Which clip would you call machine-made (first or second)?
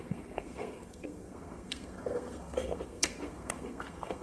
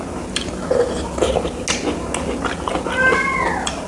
first